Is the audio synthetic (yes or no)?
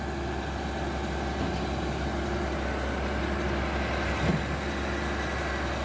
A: no